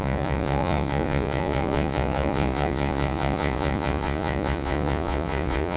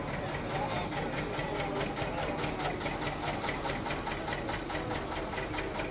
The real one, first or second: second